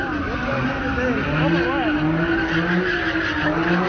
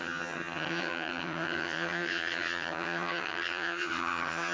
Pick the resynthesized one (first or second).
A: second